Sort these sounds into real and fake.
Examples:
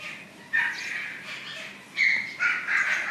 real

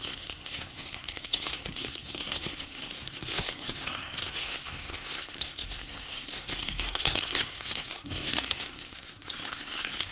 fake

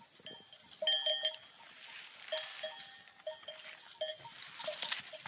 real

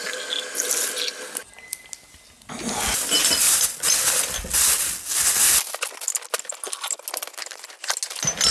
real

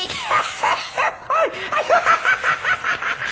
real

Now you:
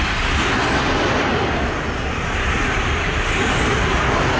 real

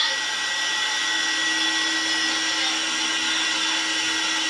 real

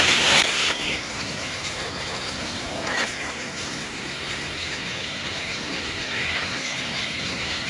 fake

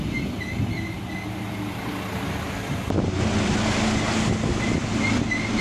real